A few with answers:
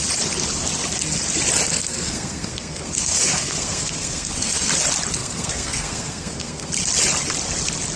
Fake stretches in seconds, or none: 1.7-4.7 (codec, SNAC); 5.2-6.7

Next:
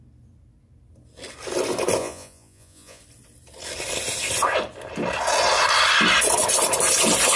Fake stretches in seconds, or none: 2.0-3.0 (vocoder, Vocos)

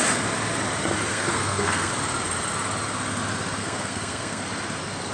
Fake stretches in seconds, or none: 1.1-1.9 (codec, SNAC); 3.6-4.4

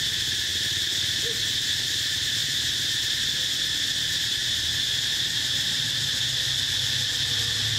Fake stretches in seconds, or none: 4.4-6.4 (vocoder, BigVGAN v2)

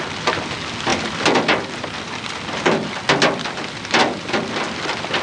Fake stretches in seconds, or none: none